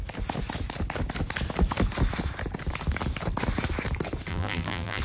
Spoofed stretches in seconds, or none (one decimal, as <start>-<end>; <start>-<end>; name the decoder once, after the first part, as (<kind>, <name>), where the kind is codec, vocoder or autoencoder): 4.3-5.0 (vocoder, BigVGAN v2)